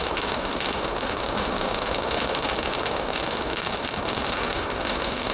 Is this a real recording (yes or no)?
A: no